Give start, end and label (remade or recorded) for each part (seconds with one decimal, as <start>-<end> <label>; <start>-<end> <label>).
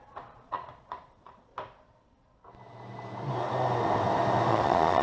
0.0-1.5 remade; 1.5-4.5 recorded; 4.5-5.0 remade